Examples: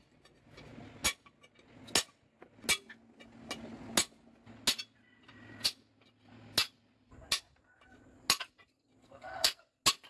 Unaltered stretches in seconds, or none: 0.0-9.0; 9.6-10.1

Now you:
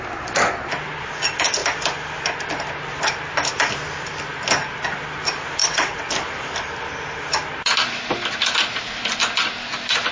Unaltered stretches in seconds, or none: 0.0-5.6; 6.1-10.1